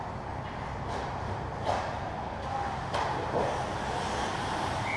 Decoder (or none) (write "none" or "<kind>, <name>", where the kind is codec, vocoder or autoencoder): none